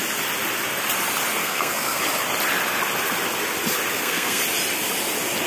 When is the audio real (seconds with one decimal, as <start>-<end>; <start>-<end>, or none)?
0.0-1.4; 2.0-3.9; 4.4-5.5